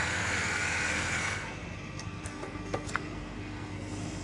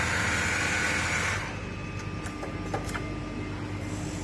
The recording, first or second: second